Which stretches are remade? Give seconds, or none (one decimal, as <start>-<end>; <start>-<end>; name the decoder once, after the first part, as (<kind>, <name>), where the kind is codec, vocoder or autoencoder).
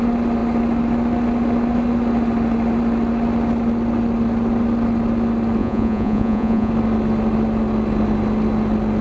5.6-6.7 (vocoder, Vocos)